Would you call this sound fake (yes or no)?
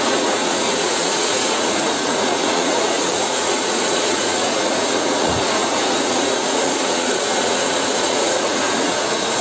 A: yes